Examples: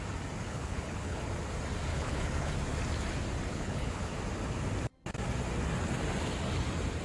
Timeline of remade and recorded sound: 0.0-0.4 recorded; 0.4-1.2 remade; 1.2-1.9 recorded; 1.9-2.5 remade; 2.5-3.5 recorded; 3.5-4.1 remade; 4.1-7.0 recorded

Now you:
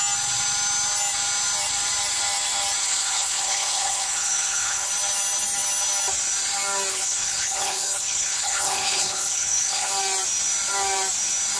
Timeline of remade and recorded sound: 0.0-2.8 recorded; 2.8-4.9 remade; 4.9-6.9 recorded; 6.9-9.9 remade; 9.9-11.6 recorded

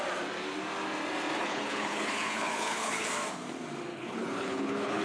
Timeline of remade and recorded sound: 0.0-1.4 recorded; 1.4-3.1 remade; 3.1-3.9 recorded; 3.9-5.0 remade

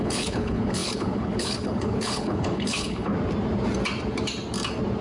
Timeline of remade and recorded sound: 0.0-3.1 remade; 3.1-5.0 recorded

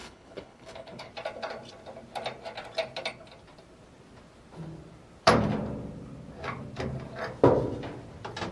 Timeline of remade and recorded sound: 0.0-1.1 remade; 1.1-8.5 recorded

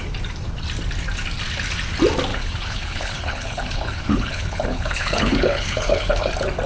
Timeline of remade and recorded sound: 0.0-2.3 recorded; 2.3-6.3 remade; 6.3-6.7 recorded

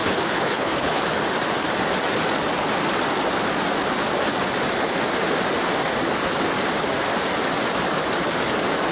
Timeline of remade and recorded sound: 0.0-1.0 remade; 1.0-8.9 recorded

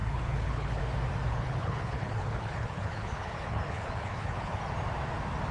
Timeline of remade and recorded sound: 0.0-0.8 remade; 0.8-1.3 recorded; 1.3-4.6 remade; 4.6-5.5 recorded